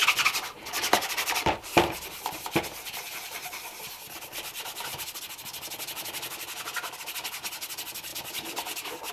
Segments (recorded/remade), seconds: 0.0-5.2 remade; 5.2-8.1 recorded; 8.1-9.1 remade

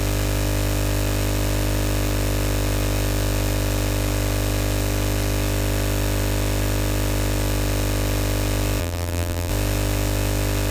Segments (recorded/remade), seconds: 0.0-8.8 recorded; 8.8-9.5 remade; 9.5-10.7 recorded

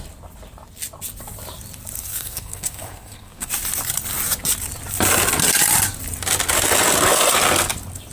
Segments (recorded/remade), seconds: 0.0-2.0 recorded; 2.0-3.5 remade; 3.5-8.1 recorded

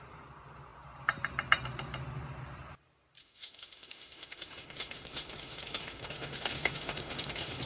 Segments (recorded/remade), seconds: 0.0-3.2 recorded; 3.2-7.6 remade

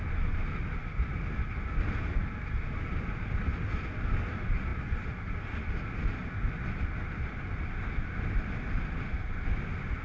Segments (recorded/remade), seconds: 0.0-10.0 recorded